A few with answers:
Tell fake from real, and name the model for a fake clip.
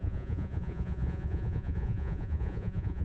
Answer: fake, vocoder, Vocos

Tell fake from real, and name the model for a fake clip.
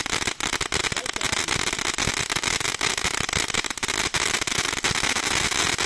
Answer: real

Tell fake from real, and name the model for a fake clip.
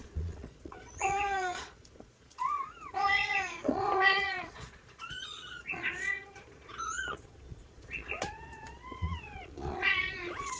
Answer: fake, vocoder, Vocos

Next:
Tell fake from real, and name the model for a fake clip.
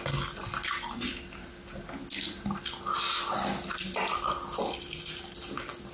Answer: real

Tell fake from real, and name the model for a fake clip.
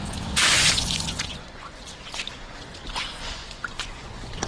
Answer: fake, vocoder, Vocos